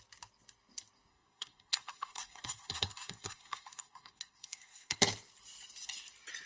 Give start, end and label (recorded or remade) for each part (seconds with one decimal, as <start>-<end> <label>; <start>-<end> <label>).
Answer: 0.0-1.1 recorded; 1.1-5.0 remade; 5.0-6.5 recorded